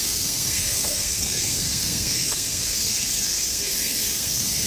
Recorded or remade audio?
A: remade